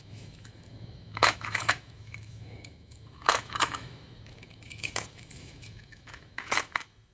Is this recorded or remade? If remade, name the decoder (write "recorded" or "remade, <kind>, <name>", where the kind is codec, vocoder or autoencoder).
remade, autoencoder, DAC-VAE